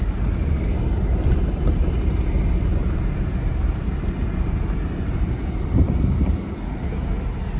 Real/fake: real